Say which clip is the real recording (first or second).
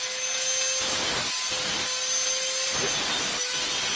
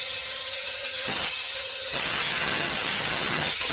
first